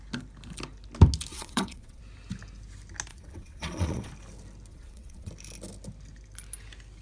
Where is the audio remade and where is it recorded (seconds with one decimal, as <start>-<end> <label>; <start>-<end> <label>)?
0.0-1.3 recorded; 1.3-2.0 remade; 2.0-3.1 recorded; 3.1-4.1 remade; 4.1-4.7 recorded; 4.7-5.3 remade; 5.3-7.0 recorded